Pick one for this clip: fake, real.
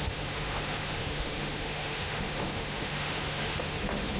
fake